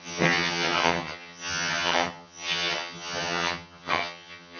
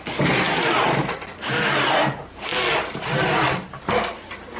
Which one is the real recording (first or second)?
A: second